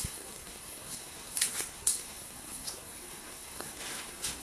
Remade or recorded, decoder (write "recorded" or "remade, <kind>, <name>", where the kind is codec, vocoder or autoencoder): remade, codec, SNAC